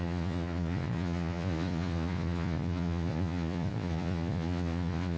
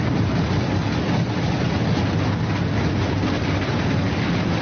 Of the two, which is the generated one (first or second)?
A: first